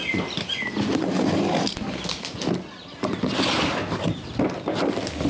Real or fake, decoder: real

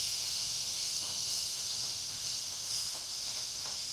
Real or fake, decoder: fake, autoencoder, DAC-VAE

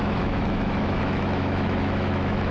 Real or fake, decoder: fake, autoencoder, DAC-VAE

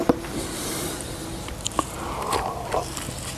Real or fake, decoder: real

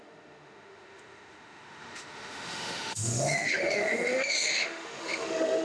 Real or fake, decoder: fake, autoencoder, DAC-VAE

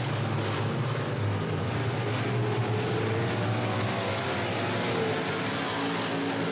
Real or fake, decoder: real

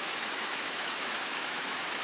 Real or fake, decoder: fake, autoencoder, DAC-VAE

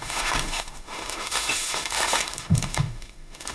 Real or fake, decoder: fake, autoencoder, DAC-VAE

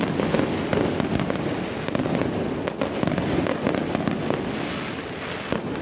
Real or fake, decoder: real